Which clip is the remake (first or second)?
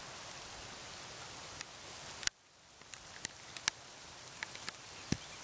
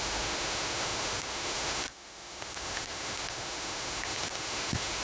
second